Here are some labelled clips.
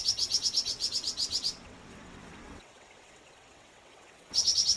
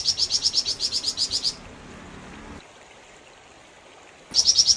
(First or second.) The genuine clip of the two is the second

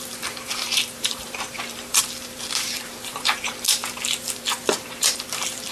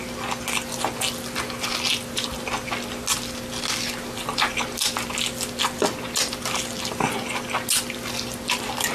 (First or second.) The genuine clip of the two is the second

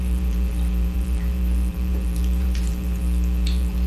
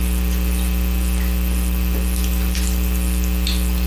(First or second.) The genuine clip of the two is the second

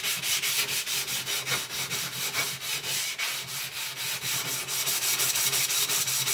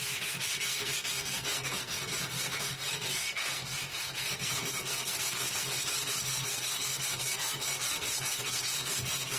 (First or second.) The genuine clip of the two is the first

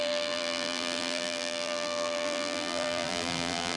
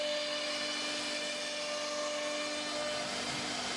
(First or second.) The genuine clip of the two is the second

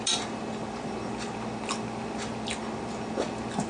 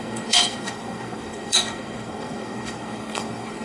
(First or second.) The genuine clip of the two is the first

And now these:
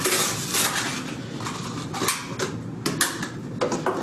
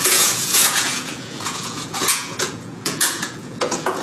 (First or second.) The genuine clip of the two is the first